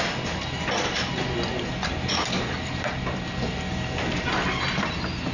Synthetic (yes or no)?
no